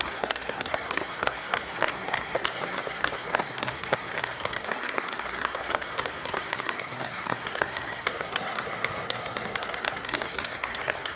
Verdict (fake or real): fake